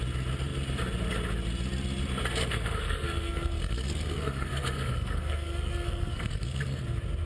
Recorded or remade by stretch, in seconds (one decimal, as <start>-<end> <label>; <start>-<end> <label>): 0.0-2.4 recorded; 2.4-6.8 remade; 6.8-7.3 recorded